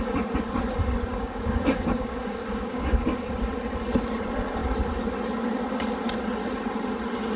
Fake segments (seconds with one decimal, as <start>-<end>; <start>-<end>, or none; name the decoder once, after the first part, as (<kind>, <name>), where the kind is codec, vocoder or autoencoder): 1.1-3.3 (codec, DAC)